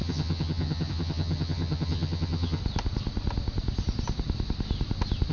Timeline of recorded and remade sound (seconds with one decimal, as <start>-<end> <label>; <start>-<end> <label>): 0.0-2.6 remade; 2.6-5.3 recorded